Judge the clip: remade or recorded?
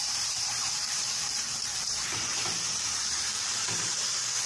remade